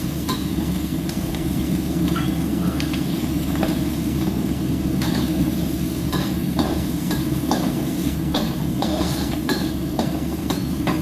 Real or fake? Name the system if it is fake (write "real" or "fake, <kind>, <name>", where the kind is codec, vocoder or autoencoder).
fake, codec, SNAC